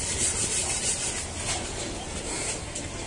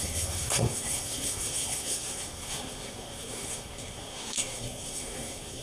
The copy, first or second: second